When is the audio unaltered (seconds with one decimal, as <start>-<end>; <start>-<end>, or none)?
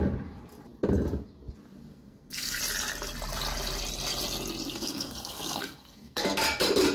0.0-1.9; 2.6-4.7; 6.4-6.9